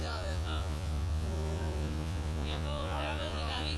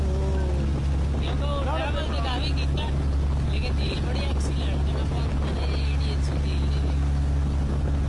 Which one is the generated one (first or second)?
first